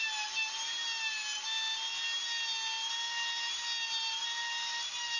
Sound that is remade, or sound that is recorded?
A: recorded